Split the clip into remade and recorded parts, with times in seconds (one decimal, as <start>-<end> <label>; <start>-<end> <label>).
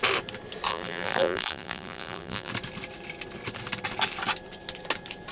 0.0-0.7 recorded; 0.7-2.5 remade; 2.5-5.3 recorded